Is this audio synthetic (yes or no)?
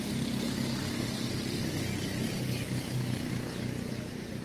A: no